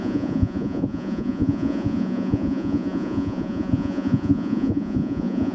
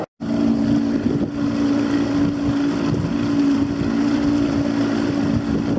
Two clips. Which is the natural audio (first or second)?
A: second